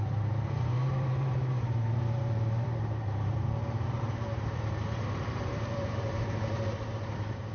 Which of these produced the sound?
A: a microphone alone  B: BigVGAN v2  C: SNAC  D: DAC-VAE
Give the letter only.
B